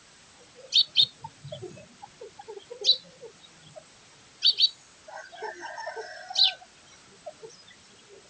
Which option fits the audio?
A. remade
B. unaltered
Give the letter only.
B